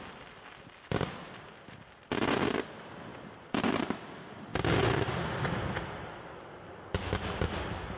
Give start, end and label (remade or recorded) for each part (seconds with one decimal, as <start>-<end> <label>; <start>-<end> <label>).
0.0-8.0 recorded